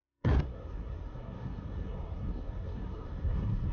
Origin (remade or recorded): remade